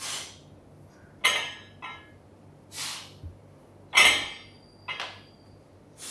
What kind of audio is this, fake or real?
real